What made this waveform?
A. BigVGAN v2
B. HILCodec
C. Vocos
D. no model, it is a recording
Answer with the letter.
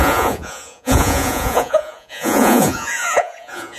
C